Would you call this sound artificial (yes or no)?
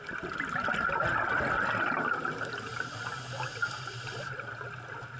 no